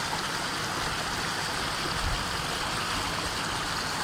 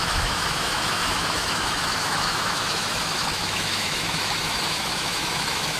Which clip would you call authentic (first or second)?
first